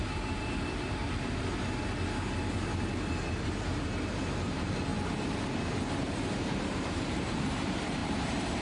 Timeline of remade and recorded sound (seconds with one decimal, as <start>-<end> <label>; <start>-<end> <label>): 0.0-1.0 remade; 1.0-3.1 recorded; 3.1-4.9 remade; 4.9-5.9 recorded; 5.9-8.6 remade